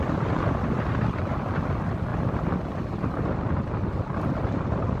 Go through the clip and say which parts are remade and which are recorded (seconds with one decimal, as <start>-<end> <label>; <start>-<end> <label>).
0.0-5.0 recorded